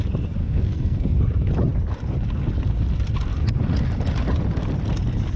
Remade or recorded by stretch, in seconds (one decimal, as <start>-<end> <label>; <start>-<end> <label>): 0.0-0.4 recorded; 0.4-1.2 remade; 1.2-5.4 recorded